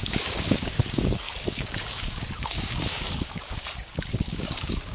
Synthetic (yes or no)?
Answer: yes